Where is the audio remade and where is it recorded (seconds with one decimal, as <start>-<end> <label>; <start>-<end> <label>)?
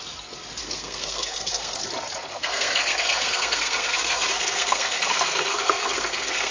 0.0-0.6 recorded; 0.6-1.8 remade; 1.8-2.3 recorded; 2.3-6.5 remade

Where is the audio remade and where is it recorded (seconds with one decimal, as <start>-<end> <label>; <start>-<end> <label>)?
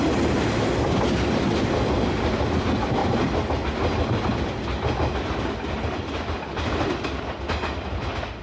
0.0-8.4 recorded